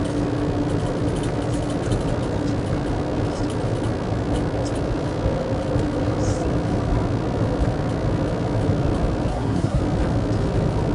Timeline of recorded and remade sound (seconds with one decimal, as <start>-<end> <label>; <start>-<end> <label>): 0.0-9.3 recorded; 9.3-9.8 remade; 9.8-10.9 recorded